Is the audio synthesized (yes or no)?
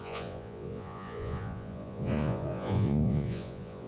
yes